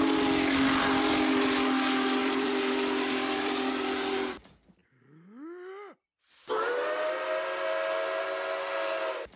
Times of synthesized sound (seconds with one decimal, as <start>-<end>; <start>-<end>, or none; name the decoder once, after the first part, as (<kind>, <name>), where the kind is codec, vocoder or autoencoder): 2.2-3.7 (vocoder, BigVGAN v2)